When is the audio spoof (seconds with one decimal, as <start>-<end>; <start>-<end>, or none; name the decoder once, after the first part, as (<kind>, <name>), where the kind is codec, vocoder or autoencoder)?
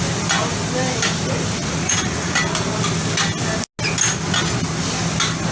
1.6-2.4 (vocoder, Vocos)